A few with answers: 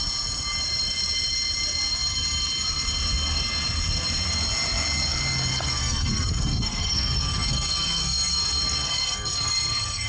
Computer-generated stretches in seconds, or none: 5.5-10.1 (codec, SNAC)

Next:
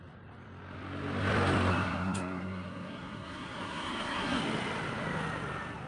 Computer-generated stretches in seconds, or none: 1.7-4.4 (codec, SNAC)

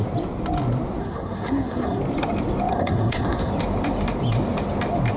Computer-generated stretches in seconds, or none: 1.0-2.0 (codec, SNAC); 2.7-3.5